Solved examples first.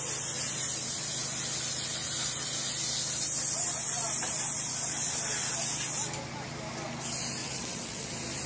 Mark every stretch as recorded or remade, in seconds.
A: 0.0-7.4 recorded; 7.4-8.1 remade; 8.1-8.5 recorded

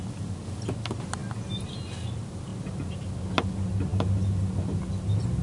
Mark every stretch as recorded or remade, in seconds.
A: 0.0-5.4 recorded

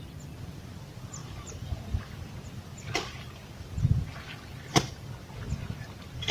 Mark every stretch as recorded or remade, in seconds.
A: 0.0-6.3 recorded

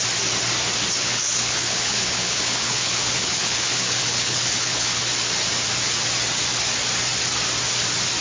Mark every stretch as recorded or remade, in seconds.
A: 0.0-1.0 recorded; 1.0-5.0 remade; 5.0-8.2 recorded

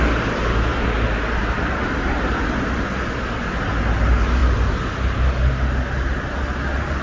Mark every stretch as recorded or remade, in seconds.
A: 0.0-7.0 recorded

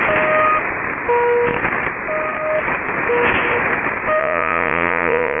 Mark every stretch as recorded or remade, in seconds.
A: 0.0-4.2 recorded; 4.2-5.4 remade